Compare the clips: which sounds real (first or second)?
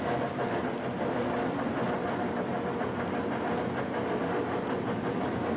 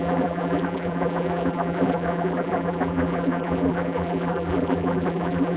first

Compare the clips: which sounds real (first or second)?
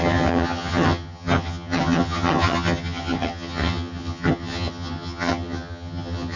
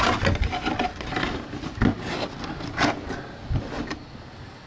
second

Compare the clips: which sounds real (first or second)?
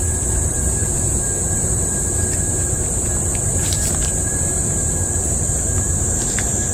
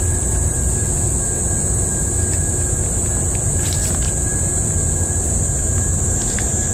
second